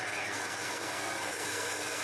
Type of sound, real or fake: fake